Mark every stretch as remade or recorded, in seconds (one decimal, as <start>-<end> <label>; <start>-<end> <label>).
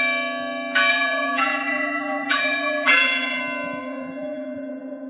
0.0-0.9 recorded; 0.9-3.4 remade; 3.4-3.8 recorded; 3.8-5.1 remade